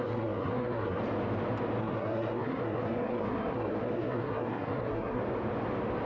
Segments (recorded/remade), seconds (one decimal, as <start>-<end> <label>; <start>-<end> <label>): 0.0-1.0 remade; 1.0-1.8 recorded; 1.8-5.2 remade; 5.2-6.1 recorded